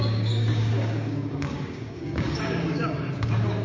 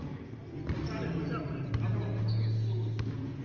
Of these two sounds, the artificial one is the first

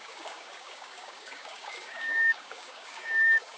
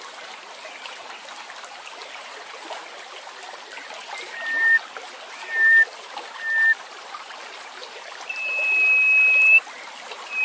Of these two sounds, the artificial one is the first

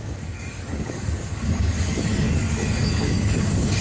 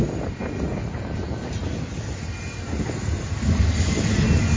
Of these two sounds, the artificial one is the first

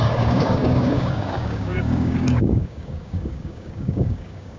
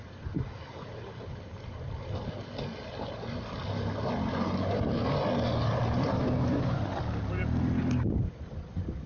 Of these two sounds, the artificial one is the first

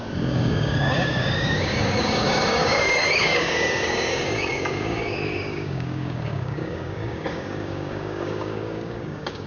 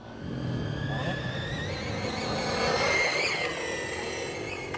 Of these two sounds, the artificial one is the first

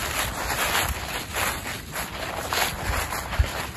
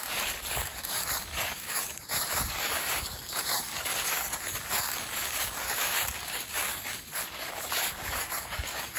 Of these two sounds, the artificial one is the second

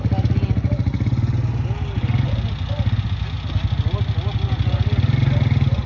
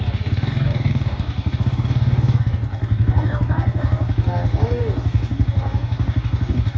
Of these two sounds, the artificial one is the second